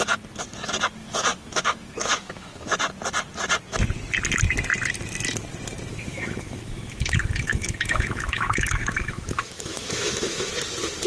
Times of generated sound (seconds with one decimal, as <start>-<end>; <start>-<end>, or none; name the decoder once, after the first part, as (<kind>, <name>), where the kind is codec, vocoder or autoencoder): 1.0-2.6 (autoencoder, DAC-VAE); 5.9-10.5